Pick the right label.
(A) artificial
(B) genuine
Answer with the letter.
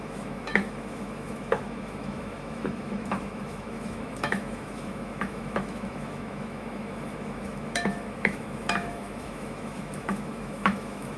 A